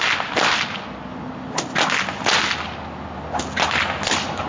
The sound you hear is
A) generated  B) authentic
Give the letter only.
B